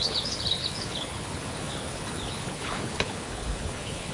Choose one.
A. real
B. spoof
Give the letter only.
B